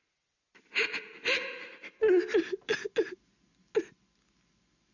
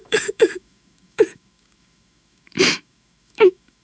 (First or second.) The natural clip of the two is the first